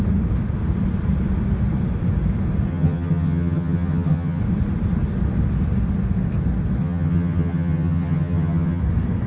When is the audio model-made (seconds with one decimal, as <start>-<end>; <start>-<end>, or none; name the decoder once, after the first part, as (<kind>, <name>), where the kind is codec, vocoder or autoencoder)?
2.7-4.4 (vocoder, HiFi-GAN); 6.8-8.8